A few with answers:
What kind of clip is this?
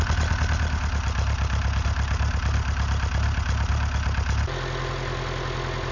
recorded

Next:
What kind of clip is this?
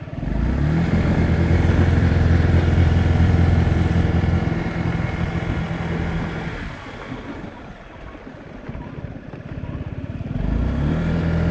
remade